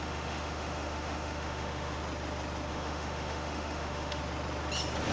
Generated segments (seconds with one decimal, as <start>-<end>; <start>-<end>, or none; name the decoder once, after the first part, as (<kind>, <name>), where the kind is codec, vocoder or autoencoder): 0.0-2.0 (autoencoder, DAC-VAE); 2.7-4.2